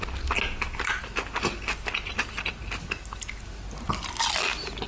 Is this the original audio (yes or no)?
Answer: yes